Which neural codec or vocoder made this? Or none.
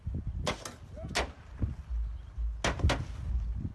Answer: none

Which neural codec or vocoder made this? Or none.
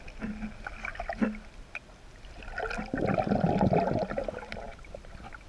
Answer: none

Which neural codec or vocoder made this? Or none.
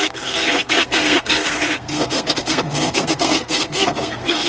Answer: codec, SNAC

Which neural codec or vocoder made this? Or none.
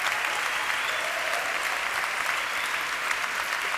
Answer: none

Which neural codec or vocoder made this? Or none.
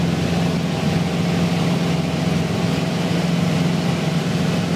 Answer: none